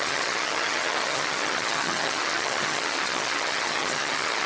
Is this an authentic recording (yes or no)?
no